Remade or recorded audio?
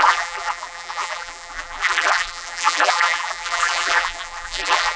remade